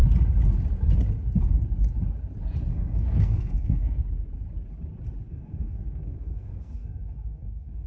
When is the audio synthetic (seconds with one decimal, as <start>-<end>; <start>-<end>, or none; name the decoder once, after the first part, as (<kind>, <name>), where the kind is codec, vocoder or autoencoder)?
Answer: 2.7-4.0 (codec, SNAC); 5.3-7.9